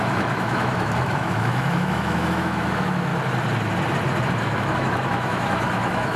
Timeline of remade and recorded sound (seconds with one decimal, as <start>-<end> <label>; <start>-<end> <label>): 0.0-3.1 remade; 3.1-4.4 recorded; 4.4-6.2 remade